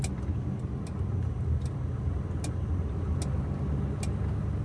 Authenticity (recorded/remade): recorded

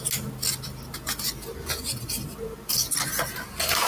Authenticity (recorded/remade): recorded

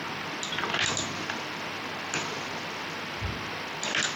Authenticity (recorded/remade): recorded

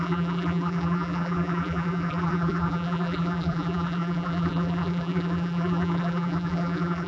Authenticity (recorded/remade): remade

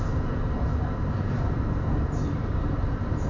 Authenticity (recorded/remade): remade